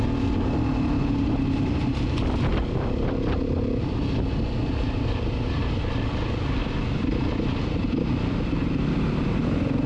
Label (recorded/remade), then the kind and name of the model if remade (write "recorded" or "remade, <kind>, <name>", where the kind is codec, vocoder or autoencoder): recorded